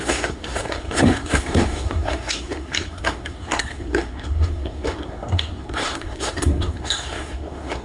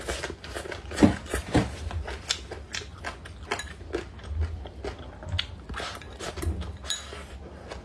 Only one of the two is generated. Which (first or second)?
first